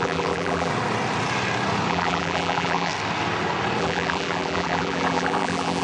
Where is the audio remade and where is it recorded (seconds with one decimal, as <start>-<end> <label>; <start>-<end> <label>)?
0.0-0.7 remade; 0.7-1.9 recorded; 1.9-2.9 remade; 2.9-3.8 recorded; 3.8-5.8 remade